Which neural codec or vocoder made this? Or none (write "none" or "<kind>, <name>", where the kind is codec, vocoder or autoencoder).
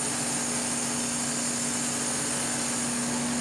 none